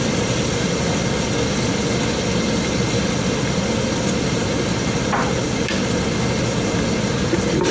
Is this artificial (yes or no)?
no